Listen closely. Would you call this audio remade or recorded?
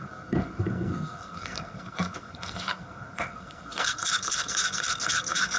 remade